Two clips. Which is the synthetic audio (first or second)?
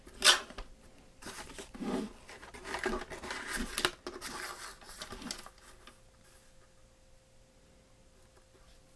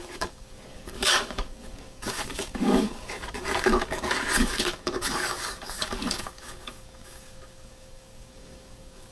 second